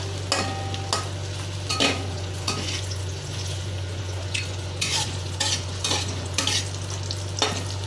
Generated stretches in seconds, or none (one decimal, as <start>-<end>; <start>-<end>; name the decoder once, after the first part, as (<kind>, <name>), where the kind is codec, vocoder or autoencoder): 1.7-6.4 (vocoder, Vocos)